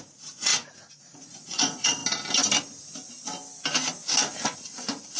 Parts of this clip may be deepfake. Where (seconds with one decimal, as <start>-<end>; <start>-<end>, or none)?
0.0-0.5; 1.0-2.0